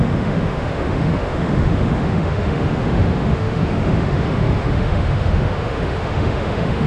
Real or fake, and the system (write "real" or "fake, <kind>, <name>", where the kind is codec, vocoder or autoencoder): fake, autoencoder, DAC-VAE